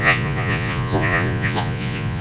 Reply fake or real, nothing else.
fake